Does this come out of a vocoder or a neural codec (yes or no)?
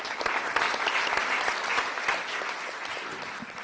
no